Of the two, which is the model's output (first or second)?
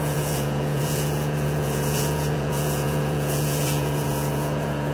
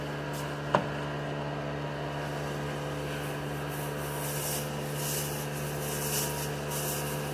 first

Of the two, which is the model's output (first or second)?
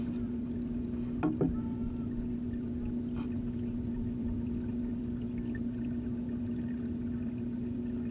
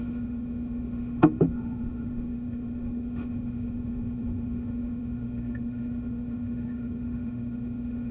second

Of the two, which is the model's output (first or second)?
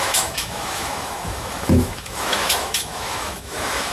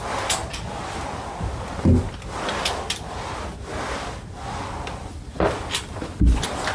first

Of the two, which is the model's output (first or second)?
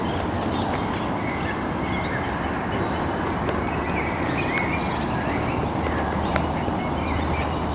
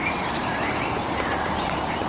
second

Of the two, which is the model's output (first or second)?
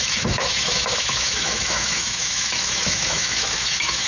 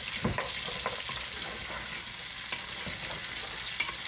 first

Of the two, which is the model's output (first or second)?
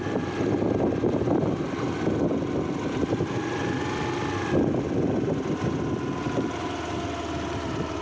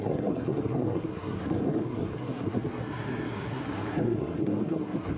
second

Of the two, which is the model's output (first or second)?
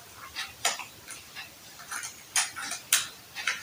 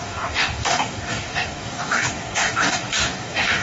second